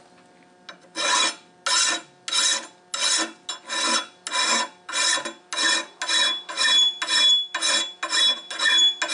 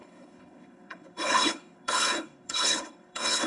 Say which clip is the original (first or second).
first